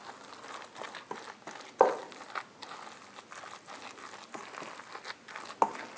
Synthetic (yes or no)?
no